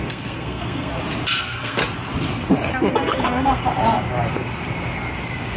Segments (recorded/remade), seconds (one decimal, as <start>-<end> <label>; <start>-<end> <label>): 0.0-0.9 remade; 0.9-1.4 recorded; 1.4-1.8 remade; 1.8-2.9 recorded; 2.9-3.6 remade; 3.6-5.6 recorded